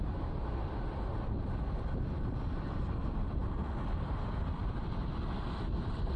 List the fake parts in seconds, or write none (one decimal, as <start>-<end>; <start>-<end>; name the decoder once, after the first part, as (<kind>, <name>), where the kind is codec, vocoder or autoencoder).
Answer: none